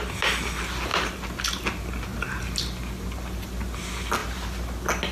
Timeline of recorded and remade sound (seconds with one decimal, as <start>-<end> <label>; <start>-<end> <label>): 0.0-5.1 recorded